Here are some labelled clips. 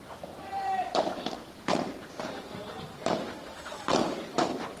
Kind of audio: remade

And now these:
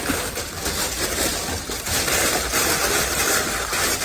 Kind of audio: remade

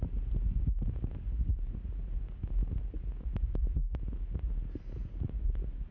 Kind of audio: recorded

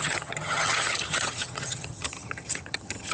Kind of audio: remade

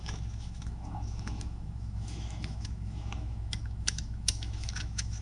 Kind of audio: remade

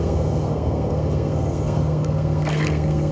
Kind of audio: remade